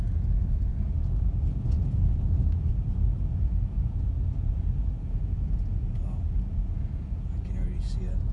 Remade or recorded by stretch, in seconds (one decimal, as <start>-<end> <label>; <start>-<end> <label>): 0.0-8.3 remade